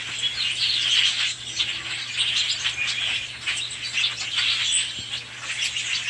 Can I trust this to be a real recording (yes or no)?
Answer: yes